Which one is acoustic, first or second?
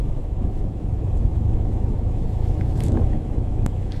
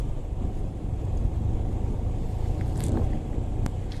second